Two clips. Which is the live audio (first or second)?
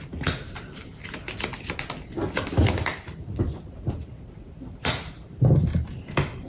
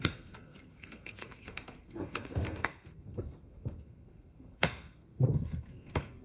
first